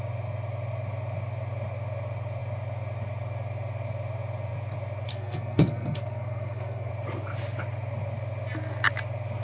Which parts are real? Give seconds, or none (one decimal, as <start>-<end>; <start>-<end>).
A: 0.0-5.1; 6.9-9.4